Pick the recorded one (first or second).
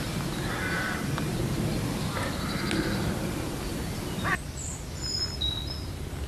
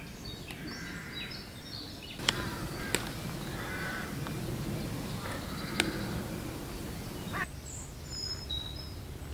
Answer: second